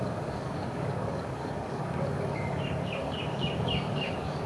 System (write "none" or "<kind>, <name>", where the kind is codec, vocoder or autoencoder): codec, DAC